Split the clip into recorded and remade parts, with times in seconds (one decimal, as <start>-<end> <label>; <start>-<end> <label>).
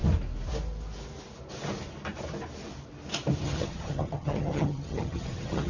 0.0-3.4 recorded; 3.4-5.7 remade